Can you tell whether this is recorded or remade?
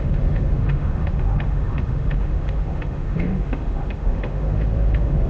remade